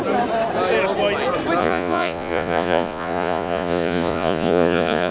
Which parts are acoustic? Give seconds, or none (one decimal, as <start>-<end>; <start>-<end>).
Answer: 0.0-1.6